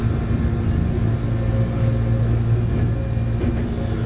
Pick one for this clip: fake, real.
real